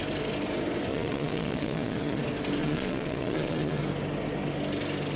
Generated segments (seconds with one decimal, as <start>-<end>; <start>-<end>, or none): 0.9-2.2; 2.6-3.8